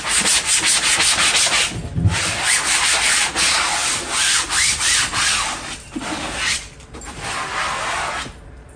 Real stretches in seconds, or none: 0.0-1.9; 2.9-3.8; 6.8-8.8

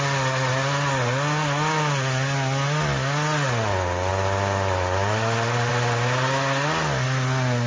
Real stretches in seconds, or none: 0.0-7.7

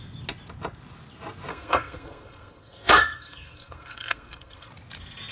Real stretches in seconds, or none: 0.0-1.5; 4.7-5.3